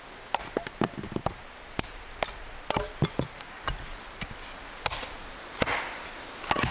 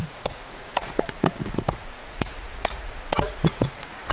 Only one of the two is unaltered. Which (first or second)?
first